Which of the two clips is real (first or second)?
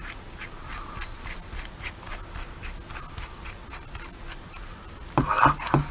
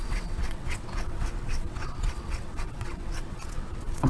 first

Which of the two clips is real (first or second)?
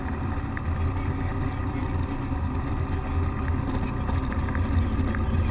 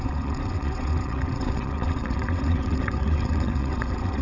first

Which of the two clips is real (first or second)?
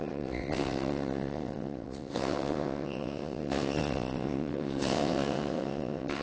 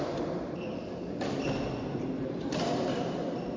second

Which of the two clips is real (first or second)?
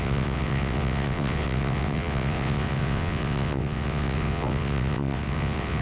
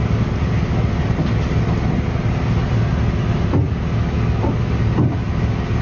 second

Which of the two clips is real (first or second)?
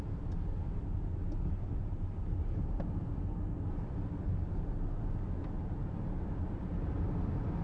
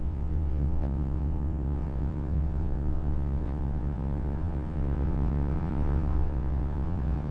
first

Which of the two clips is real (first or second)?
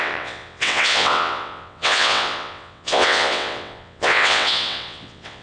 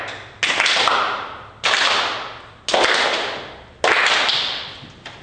second